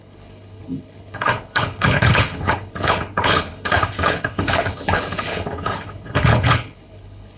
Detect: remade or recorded remade